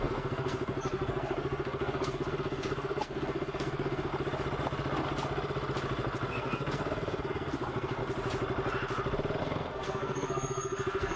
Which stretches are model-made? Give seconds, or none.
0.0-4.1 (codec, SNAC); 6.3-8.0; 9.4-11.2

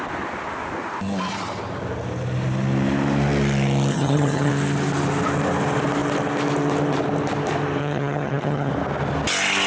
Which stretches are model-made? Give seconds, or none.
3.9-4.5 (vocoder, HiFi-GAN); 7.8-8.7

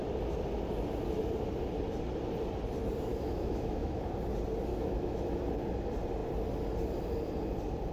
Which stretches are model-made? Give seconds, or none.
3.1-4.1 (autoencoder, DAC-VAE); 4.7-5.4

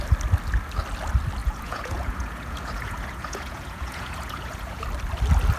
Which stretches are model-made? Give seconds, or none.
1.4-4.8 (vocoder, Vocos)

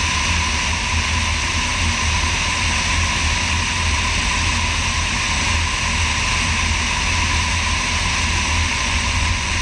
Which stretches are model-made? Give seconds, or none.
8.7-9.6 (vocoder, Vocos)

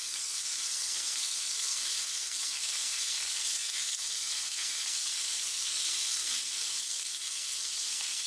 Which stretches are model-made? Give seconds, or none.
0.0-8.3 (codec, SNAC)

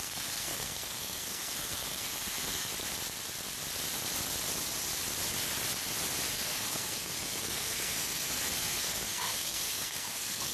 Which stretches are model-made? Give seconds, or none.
0.0-2.7 (codec, SNAC); 6.3-10.5